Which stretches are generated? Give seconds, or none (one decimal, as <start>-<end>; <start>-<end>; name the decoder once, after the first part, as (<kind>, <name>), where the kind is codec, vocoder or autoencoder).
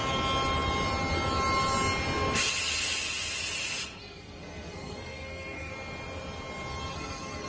4.0-5.7 (codec, SNAC); 6.9-7.5